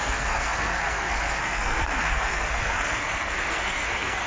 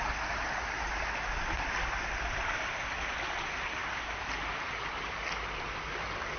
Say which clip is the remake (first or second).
first